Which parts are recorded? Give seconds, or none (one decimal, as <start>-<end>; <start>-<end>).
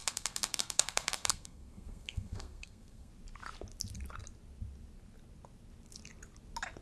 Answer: 3.1-6.8